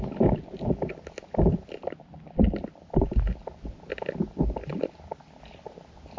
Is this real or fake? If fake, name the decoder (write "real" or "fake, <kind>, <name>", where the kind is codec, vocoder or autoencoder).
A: real